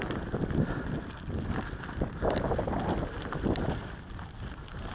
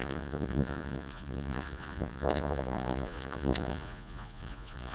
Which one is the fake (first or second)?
second